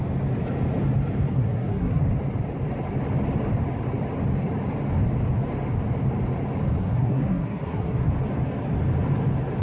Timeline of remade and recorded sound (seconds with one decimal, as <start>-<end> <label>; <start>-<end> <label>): 0.0-1.3 recorded; 1.3-2.0 remade; 2.0-6.8 recorded; 6.8-8.1 remade; 8.1-9.6 recorded